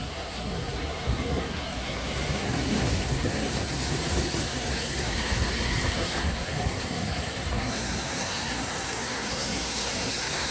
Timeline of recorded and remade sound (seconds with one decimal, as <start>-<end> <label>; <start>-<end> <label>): 0.0-10.5 remade